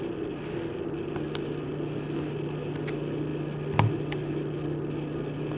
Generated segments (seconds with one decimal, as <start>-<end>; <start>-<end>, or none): none